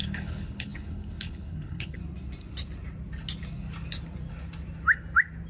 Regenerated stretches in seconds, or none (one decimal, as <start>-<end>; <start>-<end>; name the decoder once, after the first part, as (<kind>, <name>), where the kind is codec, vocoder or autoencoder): 0.0-2.0 (codec, HILCodec)